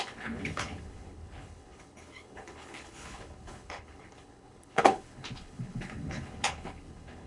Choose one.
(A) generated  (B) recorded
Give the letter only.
A